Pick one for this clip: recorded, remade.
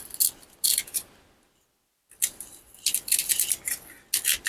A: recorded